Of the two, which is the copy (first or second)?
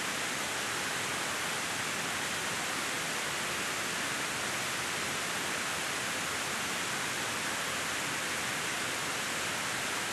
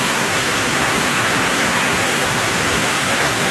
second